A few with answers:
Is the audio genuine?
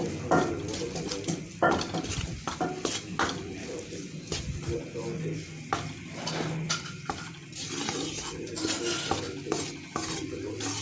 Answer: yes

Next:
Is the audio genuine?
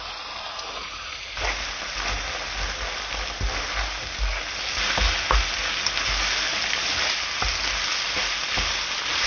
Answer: yes